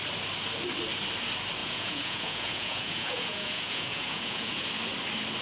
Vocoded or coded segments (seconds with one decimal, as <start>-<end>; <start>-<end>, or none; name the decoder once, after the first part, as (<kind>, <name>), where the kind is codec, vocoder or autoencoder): 1.6-4.7 (vocoder, Vocos)